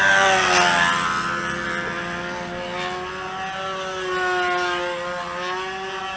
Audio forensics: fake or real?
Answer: real